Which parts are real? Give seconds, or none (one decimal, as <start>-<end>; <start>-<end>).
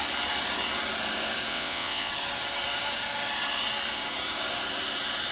0.0-1.5; 2.1-5.3